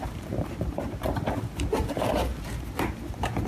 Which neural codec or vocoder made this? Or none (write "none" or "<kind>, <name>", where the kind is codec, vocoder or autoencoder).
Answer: vocoder, BigVGAN v2